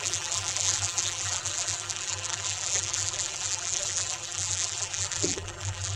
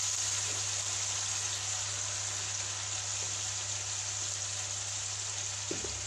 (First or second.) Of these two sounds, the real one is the second